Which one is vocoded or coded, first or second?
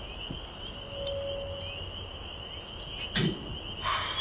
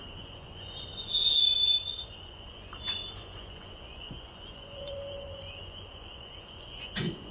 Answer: second